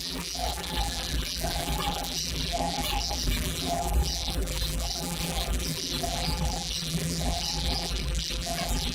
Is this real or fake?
fake